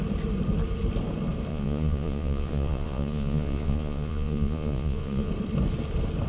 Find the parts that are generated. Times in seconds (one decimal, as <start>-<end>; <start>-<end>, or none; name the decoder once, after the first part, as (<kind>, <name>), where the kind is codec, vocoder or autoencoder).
1.5-5.3 (vocoder, Vocos)